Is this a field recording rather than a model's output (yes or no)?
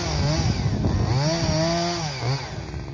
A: yes